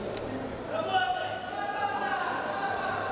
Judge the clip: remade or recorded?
recorded